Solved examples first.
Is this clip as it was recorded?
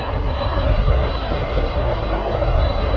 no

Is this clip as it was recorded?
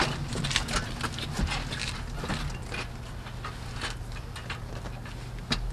yes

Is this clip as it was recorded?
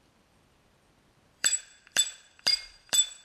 no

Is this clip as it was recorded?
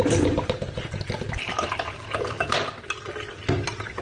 yes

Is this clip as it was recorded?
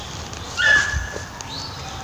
yes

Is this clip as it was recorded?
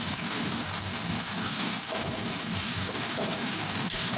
no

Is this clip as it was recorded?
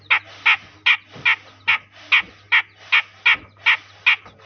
yes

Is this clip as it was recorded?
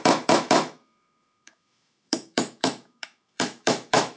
no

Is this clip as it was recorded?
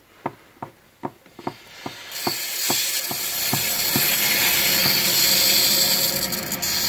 yes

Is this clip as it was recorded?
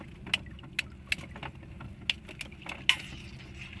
yes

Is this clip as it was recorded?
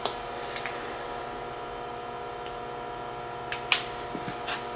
yes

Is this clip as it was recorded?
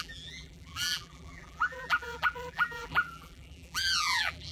no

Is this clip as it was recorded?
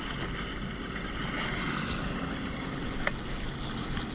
yes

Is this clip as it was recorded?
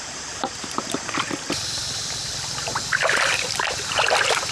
no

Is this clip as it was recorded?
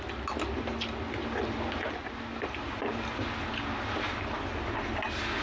yes